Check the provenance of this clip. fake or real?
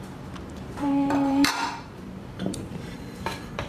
fake